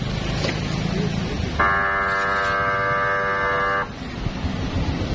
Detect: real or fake real